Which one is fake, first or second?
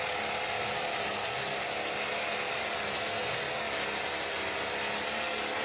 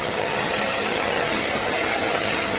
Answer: second